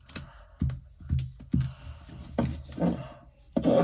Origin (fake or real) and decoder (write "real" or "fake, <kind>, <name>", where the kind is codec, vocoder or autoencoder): real